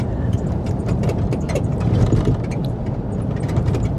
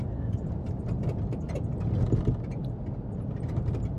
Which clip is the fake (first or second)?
first